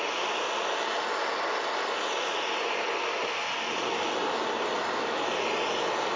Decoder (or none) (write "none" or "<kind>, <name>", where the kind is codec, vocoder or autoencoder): none